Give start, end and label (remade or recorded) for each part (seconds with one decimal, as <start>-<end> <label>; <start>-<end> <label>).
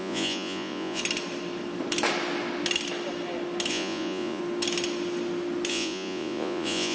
0.0-1.0 remade; 1.0-3.7 recorded; 3.7-4.4 remade; 4.4-5.7 recorded; 5.7-6.9 remade